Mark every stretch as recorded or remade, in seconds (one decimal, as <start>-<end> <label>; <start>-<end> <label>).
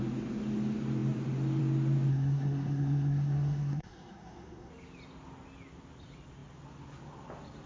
0.0-2.1 recorded; 2.1-4.7 remade; 4.7-7.7 recorded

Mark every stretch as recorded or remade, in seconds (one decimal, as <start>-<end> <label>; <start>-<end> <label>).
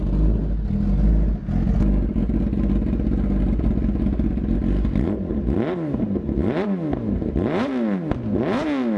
0.0-9.0 recorded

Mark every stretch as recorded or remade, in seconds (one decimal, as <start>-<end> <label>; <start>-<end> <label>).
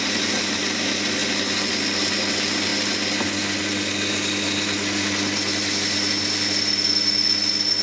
0.0-7.8 recorded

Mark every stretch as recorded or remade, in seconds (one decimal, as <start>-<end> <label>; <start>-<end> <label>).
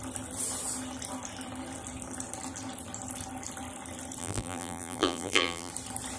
0.0-4.2 recorded; 4.2-5.7 remade; 5.7-6.2 recorded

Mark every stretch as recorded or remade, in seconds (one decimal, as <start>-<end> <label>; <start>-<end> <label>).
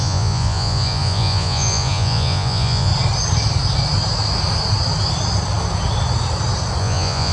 0.0-2.9 remade; 2.9-6.8 recorded; 6.8-7.3 remade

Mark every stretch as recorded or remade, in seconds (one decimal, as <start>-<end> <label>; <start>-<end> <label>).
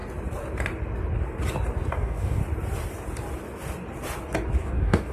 0.0-1.9 recorded; 1.9-2.4 remade; 2.4-4.6 recorded; 4.6-5.1 remade